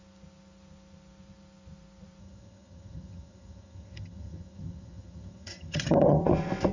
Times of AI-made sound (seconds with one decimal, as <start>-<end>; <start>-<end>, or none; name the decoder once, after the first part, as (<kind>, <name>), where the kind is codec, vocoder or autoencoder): 2.2-6.2 (vocoder, HiFi-GAN)